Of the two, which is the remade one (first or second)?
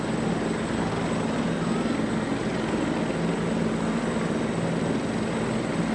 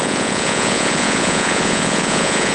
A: second